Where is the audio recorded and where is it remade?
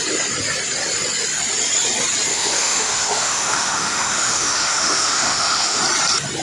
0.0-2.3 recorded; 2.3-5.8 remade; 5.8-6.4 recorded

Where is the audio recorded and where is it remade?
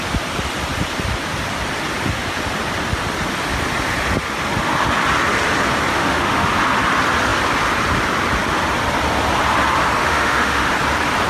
0.0-5.9 recorded; 5.9-6.5 remade; 6.5-10.0 recorded; 10.0-10.7 remade; 10.7-11.3 recorded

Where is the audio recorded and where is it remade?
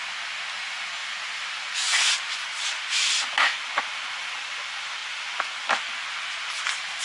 0.0-7.0 recorded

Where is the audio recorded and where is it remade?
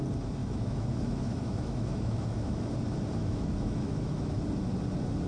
0.0-0.4 recorded; 0.4-2.7 remade; 2.7-3.2 recorded; 3.2-4.4 remade; 4.4-5.3 recorded